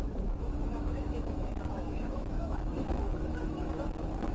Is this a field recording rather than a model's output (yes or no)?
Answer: no